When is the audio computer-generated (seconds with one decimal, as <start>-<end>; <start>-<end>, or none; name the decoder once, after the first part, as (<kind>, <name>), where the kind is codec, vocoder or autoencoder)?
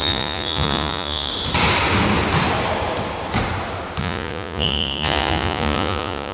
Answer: 0.0-1.3 (vocoder, Vocos); 4.0-6.3